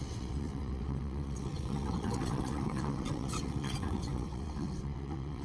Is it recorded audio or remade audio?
remade